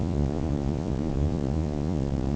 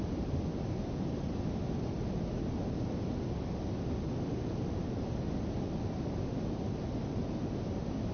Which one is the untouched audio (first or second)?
second